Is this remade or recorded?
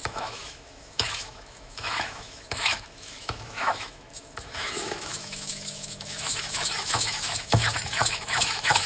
remade